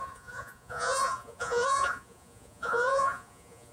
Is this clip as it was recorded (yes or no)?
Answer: no